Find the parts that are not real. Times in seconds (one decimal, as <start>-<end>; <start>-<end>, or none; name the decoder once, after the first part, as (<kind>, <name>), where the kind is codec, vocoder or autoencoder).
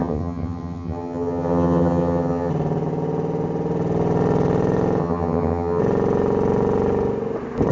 0.0-2.5 (vocoder, HiFi-GAN); 5.0-5.8